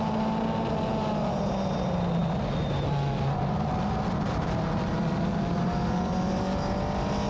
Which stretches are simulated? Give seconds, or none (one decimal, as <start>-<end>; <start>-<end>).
none